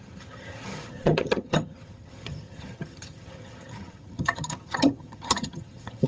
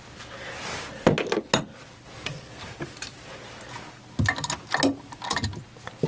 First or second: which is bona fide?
second